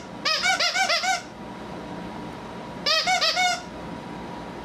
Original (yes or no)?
yes